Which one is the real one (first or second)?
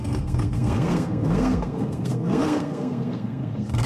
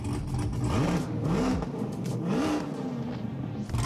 second